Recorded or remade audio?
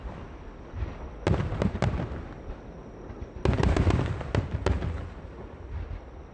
recorded